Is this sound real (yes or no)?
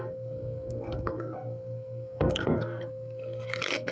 no